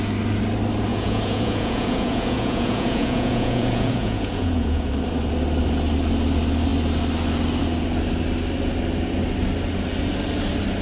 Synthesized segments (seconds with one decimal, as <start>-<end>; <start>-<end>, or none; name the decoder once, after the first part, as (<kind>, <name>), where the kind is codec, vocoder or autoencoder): 0.9-4.9 (vocoder, Vocos)